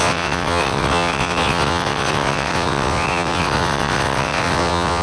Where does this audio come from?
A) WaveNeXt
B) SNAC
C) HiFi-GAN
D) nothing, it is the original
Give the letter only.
A